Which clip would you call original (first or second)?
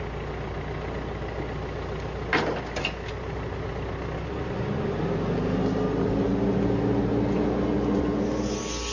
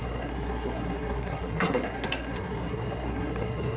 first